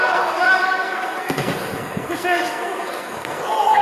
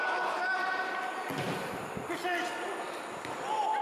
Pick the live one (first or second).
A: second